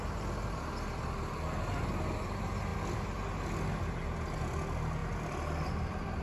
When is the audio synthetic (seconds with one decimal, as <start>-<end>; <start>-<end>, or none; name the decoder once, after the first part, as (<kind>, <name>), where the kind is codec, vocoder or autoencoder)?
5.0-6.2 (vocoder, BigVGAN v2)